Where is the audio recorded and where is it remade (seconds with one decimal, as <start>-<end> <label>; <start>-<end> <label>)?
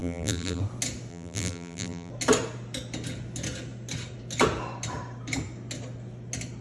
0.0-0.6 remade; 0.6-1.1 recorded; 1.1-2.1 remade; 2.1-6.6 recorded